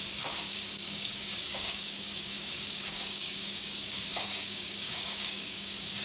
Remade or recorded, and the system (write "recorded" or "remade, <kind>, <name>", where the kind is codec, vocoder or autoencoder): remade, codec, DAC